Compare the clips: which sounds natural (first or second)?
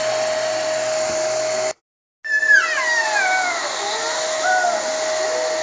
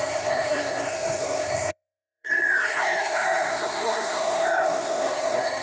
first